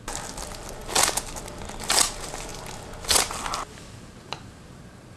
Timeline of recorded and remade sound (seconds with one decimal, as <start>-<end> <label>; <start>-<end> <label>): 0.0-5.2 recorded